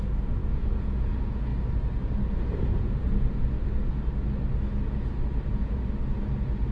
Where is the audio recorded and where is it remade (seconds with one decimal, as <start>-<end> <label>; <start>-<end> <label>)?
0.0-1.5 remade; 1.5-5.5 recorded; 5.5-6.7 remade